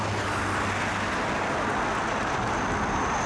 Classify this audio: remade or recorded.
recorded